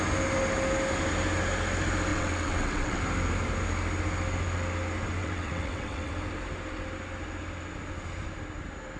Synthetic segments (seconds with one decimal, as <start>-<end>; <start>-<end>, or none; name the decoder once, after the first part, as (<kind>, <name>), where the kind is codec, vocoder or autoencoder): 2.1-3.0 (vocoder, WaveNeXt); 5.2-6.1